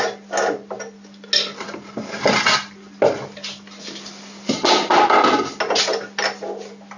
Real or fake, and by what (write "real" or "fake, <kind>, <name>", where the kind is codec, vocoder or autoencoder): real